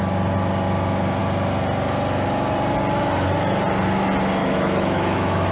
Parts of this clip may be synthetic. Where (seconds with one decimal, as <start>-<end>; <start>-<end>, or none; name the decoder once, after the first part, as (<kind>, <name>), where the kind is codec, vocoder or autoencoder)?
4.4-5.5 (autoencoder, DAC-VAE)